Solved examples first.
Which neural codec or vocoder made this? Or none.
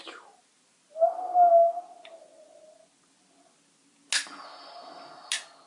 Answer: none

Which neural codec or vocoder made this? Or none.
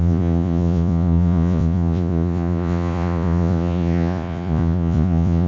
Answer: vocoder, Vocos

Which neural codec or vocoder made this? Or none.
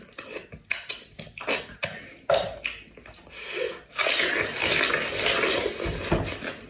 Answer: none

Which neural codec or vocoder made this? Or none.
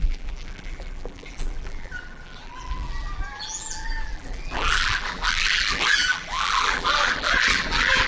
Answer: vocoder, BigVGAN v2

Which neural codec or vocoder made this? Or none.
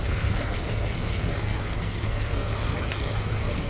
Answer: codec, SNAC